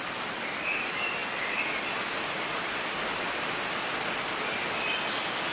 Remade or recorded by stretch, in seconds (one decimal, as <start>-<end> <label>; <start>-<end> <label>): 0.0-5.5 recorded